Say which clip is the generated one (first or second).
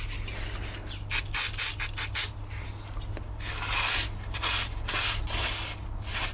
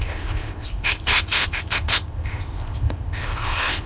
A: second